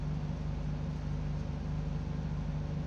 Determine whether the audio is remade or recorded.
recorded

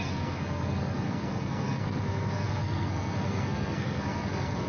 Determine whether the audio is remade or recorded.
remade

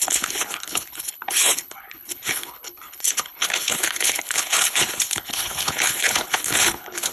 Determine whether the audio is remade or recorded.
remade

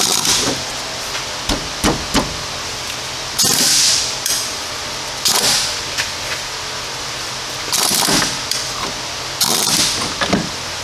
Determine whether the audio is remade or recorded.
recorded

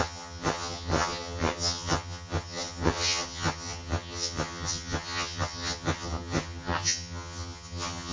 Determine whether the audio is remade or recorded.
remade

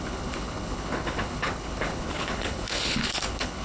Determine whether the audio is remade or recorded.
remade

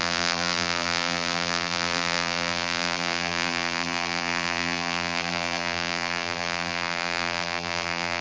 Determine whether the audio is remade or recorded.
remade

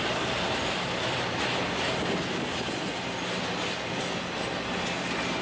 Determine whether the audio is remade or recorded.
recorded